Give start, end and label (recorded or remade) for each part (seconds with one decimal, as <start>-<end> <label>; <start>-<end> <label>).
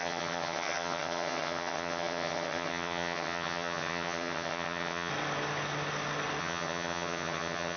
0.0-5.1 remade; 5.1-6.4 recorded; 6.4-7.8 remade